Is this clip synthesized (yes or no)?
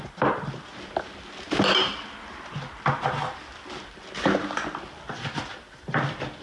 no